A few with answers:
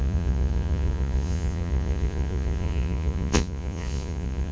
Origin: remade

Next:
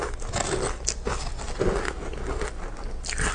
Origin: recorded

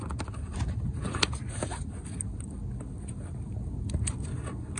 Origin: recorded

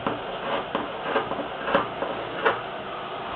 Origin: recorded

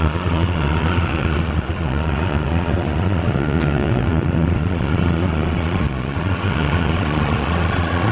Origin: remade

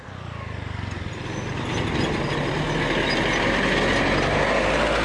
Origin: recorded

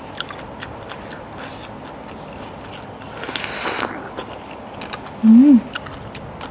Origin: recorded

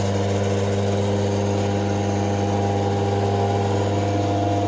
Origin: recorded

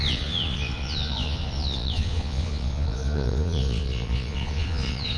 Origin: remade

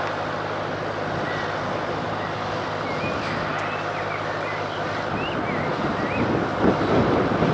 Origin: recorded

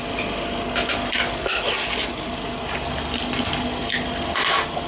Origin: recorded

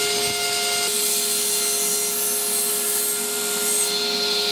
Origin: recorded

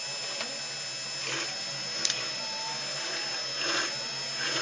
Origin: recorded